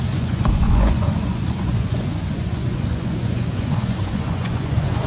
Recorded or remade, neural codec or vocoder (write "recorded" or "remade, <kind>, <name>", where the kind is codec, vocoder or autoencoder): remade, vocoder, Vocos